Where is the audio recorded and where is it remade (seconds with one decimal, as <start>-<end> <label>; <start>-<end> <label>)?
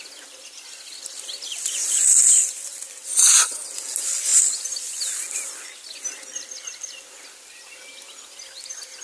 0.0-3.1 recorded; 3.1-3.7 remade; 3.7-9.0 recorded